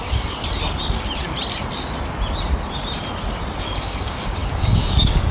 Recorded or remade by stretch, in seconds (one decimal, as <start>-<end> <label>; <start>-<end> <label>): 0.0-0.4 remade; 0.4-3.6 recorded; 3.6-5.3 remade